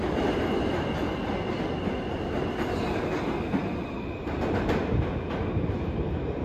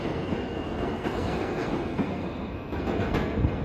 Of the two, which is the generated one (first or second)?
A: second